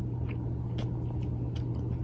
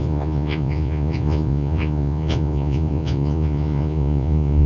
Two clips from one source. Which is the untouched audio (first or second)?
first